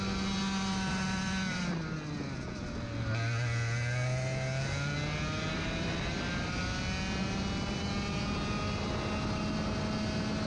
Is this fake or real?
real